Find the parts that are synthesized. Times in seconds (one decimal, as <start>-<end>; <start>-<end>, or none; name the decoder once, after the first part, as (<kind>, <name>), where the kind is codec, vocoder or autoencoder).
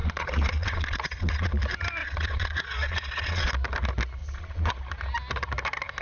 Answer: 0.0-1.5 (vocoder, Vocos); 2.0-3.5; 4.2-4.8